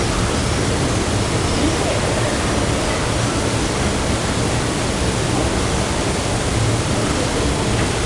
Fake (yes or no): no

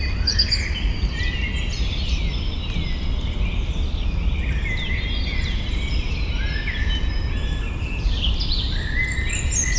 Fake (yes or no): no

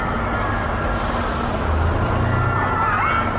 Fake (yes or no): no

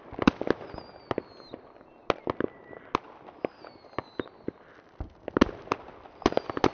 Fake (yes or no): no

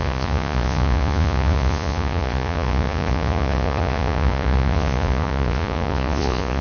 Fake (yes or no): yes